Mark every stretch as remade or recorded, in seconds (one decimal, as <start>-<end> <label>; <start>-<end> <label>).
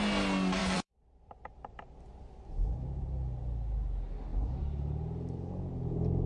0.0-0.6 recorded; 0.6-1.3 remade; 1.3-6.3 recorded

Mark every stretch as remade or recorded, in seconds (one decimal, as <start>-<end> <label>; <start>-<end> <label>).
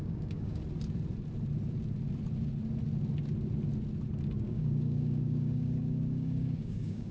0.0-0.6 remade; 0.6-4.4 recorded; 4.4-7.1 remade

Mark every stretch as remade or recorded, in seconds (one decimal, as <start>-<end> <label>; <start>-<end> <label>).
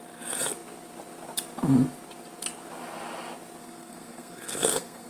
0.0-3.6 recorded; 3.6-5.1 remade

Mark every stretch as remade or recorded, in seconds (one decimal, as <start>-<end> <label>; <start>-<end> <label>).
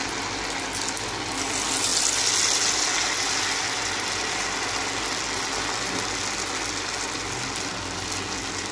0.0-8.7 recorded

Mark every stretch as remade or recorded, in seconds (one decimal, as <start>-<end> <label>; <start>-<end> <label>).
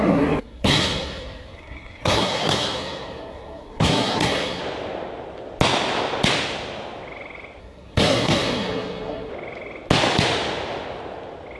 0.0-4.6 remade; 4.6-7.6 recorded; 7.6-9.3 remade; 9.3-11.6 recorded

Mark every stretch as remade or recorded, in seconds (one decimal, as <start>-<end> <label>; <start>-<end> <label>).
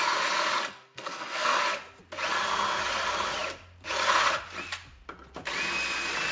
0.0-0.7 recorded; 0.7-1.6 remade; 1.6-6.3 recorded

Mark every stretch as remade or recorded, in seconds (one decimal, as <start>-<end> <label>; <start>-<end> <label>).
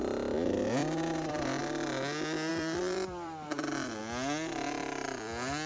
0.0-0.8 recorded; 0.8-1.6 remade; 1.6-2.5 recorded; 2.5-4.0 remade; 4.0-5.7 recorded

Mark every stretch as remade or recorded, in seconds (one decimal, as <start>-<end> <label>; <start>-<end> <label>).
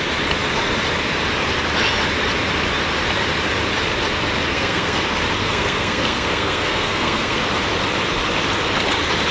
0.0-4.5 recorded; 4.5-5.0 remade; 5.0-5.4 recorded; 5.4-7.4 remade; 7.4-9.3 recorded